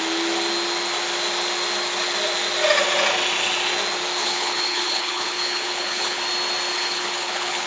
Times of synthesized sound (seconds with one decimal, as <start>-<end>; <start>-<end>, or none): 4.2-6.2; 6.7-7.7